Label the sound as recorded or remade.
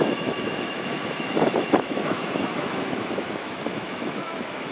remade